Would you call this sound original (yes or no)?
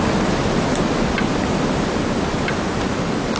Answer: yes